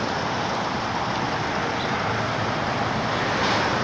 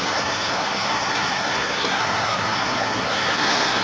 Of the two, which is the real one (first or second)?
first